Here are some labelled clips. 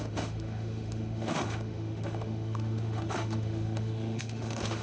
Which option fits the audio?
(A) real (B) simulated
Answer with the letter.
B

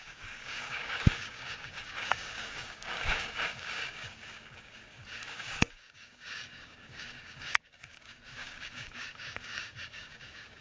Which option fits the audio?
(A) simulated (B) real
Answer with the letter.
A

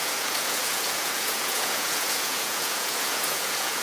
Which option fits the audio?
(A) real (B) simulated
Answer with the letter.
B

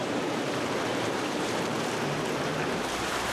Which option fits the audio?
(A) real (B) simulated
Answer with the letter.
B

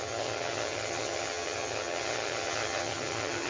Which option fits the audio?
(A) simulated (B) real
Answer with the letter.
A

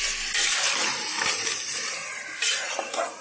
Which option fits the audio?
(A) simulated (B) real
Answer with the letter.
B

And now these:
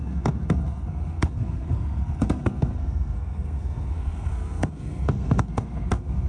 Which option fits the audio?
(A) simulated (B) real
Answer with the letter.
A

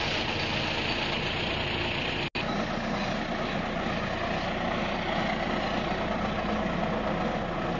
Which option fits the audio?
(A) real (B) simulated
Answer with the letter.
A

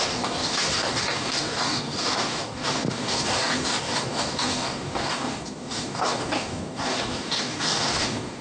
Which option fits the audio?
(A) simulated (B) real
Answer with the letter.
A